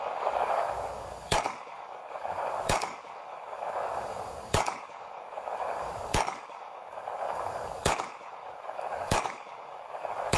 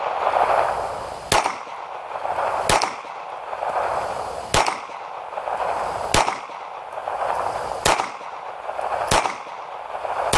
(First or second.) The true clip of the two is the second